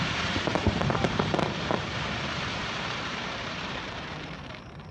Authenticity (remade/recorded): remade